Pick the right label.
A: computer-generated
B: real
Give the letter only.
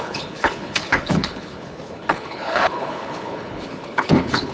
A